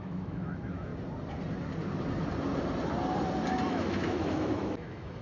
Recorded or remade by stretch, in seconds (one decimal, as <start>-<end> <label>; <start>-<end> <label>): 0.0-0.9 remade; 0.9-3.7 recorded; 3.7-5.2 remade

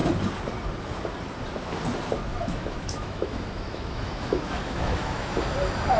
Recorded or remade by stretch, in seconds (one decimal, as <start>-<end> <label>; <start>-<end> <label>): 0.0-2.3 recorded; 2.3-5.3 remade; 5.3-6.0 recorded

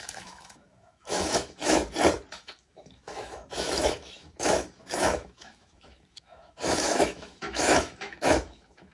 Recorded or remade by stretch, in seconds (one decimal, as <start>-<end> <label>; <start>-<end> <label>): 0.0-1.8 remade; 1.8-2.3 recorded; 2.3-8.9 remade

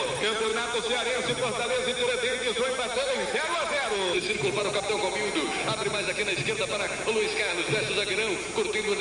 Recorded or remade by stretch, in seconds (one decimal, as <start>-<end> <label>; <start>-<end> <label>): 0.0-0.5 remade; 0.5-3.1 recorded; 3.1-4.6 remade; 4.6-9.0 recorded